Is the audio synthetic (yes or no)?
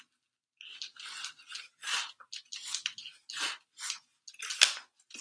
no